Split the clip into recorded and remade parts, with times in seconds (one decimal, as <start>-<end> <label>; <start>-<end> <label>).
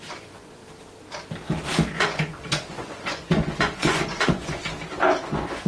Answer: 0.0-0.6 remade; 0.6-1.9 recorded; 1.9-4.6 remade; 4.6-5.2 recorded; 5.2-5.7 remade